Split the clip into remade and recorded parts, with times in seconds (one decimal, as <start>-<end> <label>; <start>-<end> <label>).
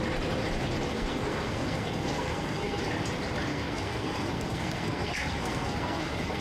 0.0-0.9 recorded; 0.9-2.8 remade; 2.8-3.5 recorded; 3.5-6.4 remade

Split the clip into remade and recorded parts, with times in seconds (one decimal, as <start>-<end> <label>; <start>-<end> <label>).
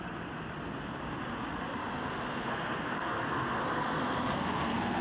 0.0-1.8 recorded; 1.8-5.0 remade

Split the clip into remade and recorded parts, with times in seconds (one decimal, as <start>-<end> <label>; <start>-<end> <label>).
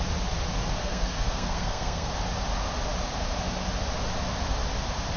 0.0-0.8 recorded; 0.8-2.1 remade; 2.1-5.2 recorded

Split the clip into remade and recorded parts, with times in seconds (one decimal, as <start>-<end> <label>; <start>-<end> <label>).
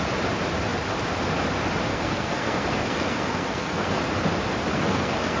0.0-1.9 recorded; 1.9-4.0 remade; 4.0-4.7 recorded; 4.7-5.4 remade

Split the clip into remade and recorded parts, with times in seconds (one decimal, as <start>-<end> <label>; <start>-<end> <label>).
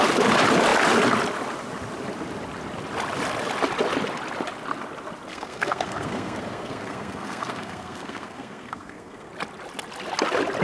0.0-5.3 recorded; 5.3-9.3 remade; 9.3-10.6 recorded